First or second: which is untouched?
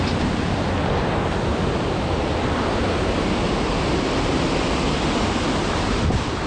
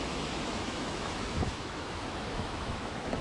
first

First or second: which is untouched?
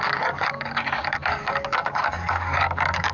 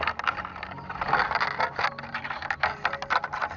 second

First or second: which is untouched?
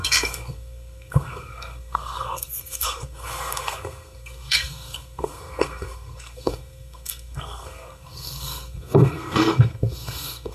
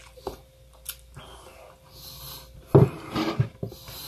second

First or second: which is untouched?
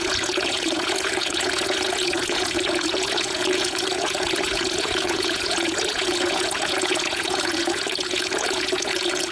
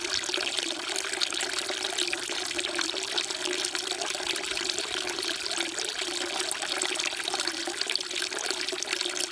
second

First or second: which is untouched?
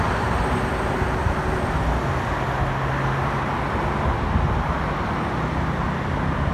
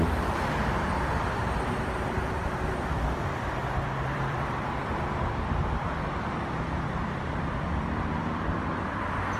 first